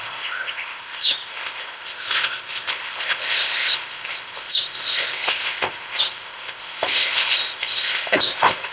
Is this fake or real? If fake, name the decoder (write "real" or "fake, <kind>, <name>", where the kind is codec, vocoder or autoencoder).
fake, codec, ZipCodec